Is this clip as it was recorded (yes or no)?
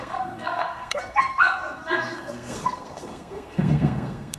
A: no